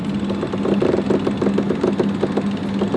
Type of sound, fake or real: real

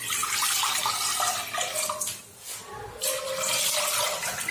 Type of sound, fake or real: real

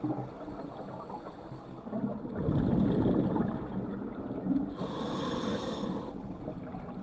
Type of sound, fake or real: real